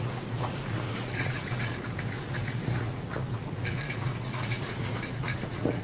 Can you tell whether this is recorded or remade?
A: remade